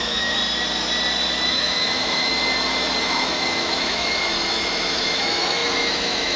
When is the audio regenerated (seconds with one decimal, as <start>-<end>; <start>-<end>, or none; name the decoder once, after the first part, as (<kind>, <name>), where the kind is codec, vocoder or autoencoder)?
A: 0.0-0.4 (autoencoder, DAC-VAE); 1.5-2.3; 3.0-6.4